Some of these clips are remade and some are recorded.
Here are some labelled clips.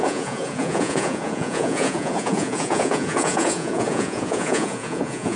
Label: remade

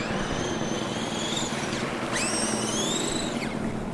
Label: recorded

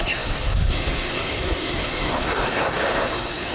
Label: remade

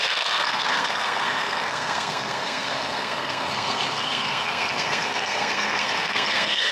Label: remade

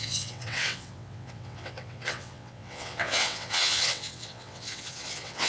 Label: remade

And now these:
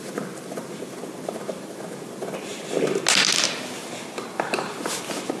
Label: recorded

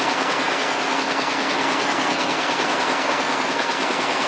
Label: remade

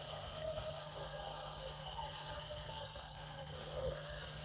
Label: remade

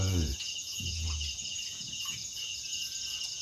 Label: remade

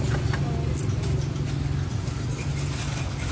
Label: recorded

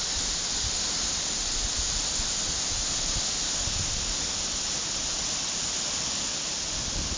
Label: recorded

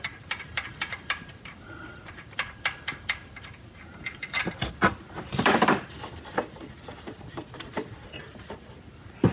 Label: remade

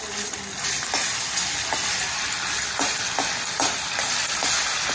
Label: recorded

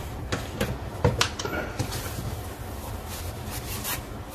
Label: recorded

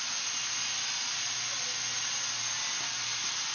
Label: recorded